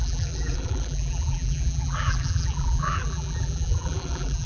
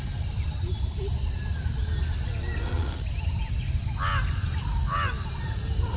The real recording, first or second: second